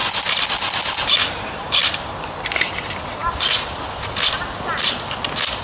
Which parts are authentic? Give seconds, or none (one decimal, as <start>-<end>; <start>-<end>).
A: 0.0-5.6